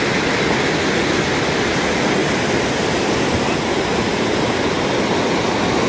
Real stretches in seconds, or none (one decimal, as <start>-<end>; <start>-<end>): 0.0-2.2; 3.6-4.1; 4.8-5.9